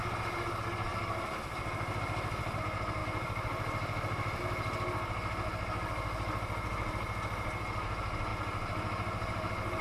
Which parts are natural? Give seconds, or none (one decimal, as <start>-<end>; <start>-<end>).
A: 0.0-0.9; 2.0-3.0; 4.4-9.8